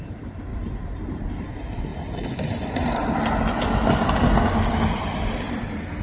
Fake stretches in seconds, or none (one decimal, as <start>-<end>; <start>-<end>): 0.5-1.3